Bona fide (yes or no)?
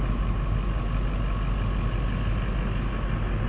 yes